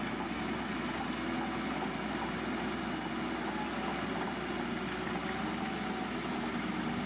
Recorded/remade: recorded